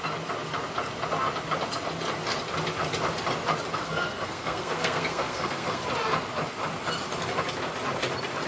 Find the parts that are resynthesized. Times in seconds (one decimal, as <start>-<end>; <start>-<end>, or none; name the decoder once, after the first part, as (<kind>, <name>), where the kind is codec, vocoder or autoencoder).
3.7-5.8 (codec, SNAC)

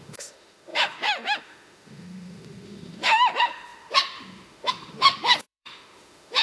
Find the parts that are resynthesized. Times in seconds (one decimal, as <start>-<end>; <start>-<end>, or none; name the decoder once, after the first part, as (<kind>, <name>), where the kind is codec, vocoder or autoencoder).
0.0-6.4 (autoencoder, DAC-VAE)

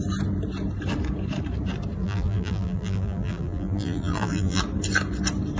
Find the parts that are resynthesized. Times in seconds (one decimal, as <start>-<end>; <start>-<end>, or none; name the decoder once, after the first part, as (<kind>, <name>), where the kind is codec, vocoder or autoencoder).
2.0-4.6 (vocoder, BigVGAN v2)

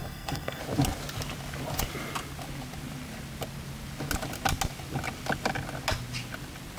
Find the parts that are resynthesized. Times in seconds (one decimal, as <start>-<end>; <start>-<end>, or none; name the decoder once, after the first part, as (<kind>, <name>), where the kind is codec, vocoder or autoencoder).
0.0-0.6 (codec, SNAC)